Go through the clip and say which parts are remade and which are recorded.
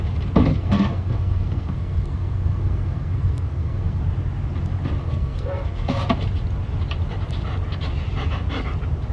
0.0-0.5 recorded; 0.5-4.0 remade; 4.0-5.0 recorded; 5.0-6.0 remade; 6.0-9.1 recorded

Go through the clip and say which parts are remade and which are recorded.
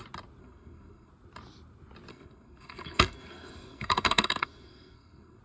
0.0-0.4 recorded; 0.4-1.1 remade; 1.1-2.1 recorded; 2.1-5.4 remade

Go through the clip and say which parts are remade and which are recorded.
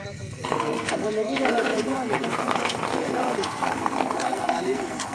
0.0-5.1 remade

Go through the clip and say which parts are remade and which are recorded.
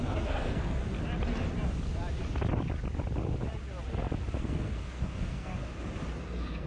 0.0-0.8 remade; 0.8-4.4 recorded; 4.4-5.5 remade; 5.5-6.2 recorded; 6.2-6.7 remade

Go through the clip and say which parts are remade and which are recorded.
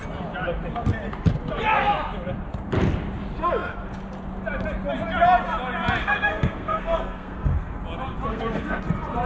0.0-6.0 recorded; 6.0-7.8 remade; 7.8-8.3 recorded; 8.3-8.8 remade; 8.8-9.3 recorded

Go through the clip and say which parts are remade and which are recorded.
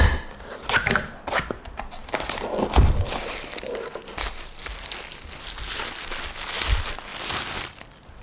0.0-8.2 recorded